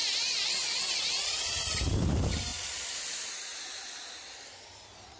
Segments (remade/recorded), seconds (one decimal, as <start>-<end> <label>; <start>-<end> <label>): 0.0-5.2 recorded